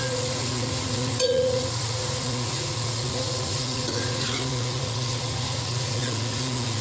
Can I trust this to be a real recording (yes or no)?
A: no